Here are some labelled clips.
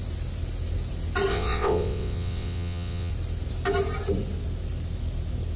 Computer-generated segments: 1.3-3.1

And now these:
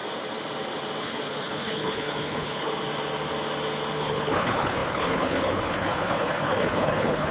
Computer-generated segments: 1.0-2.7; 4.0-7.3

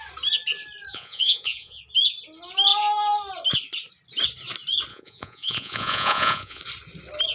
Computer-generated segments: 0.9-1.8; 4.9-6.6

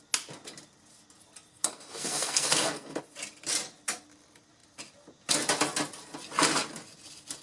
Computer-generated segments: 1.5-3.0

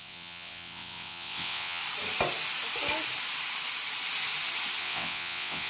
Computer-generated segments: 0.0-1.8; 4.8-5.7

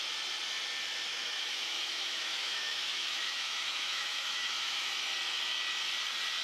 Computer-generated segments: 1.1-4.9

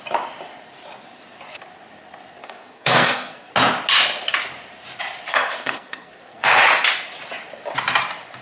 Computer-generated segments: 2.4-3.5; 5.3-6.6